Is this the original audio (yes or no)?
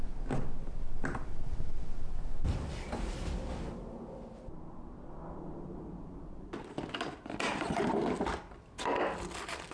yes